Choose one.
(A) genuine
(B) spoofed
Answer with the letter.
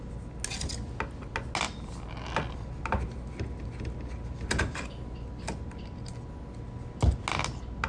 A